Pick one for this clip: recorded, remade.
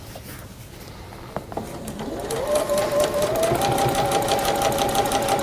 recorded